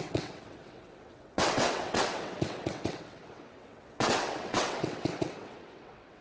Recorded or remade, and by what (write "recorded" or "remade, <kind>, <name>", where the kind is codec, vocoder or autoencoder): remade, vocoder, WaveNeXt